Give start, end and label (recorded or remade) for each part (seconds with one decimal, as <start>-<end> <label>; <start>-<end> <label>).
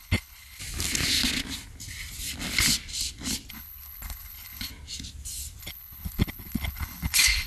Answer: 0.0-0.6 remade; 0.6-3.5 recorded; 3.5-4.7 remade; 4.7-5.6 recorded; 5.6-7.5 remade